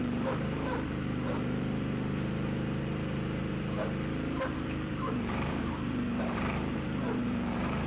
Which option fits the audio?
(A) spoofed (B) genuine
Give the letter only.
A